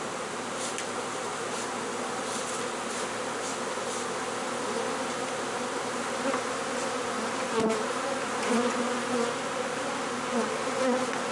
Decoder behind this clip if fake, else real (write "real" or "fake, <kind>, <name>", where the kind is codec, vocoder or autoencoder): real